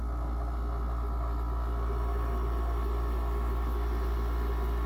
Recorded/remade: recorded